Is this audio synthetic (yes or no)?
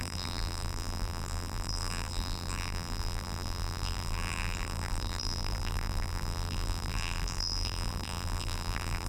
yes